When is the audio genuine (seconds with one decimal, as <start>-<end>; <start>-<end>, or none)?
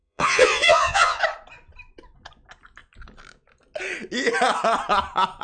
1.2-5.4